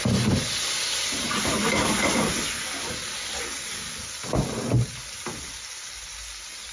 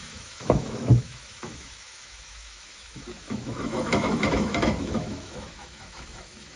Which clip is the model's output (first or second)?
second